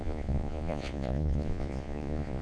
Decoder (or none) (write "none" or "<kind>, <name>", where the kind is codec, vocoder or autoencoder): vocoder, Vocos